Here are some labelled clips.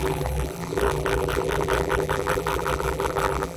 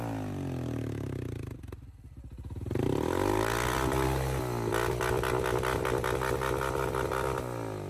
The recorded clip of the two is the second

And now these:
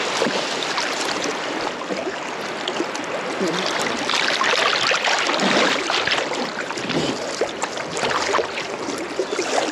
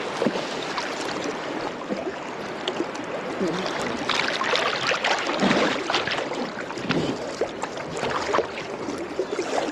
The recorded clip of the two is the second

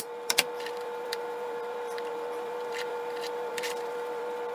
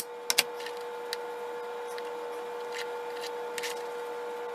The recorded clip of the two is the second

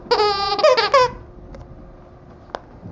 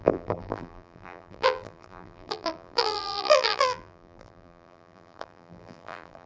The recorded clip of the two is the first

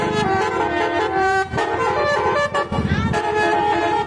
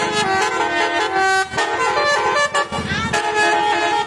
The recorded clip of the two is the second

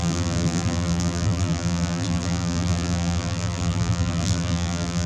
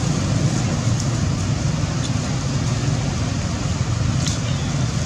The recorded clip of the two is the second